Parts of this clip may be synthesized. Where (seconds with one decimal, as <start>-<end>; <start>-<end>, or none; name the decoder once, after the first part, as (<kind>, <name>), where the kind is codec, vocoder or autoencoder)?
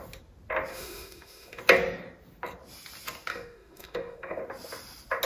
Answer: 0.7-1.6 (autoencoder, DAC-VAE); 3.3-4.4